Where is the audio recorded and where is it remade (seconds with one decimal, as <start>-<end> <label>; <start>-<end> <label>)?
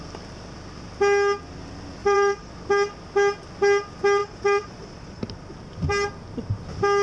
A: 0.0-2.0 recorded; 2.0-2.5 remade; 2.5-4.2 recorded; 4.2-5.2 remade; 5.2-7.0 recorded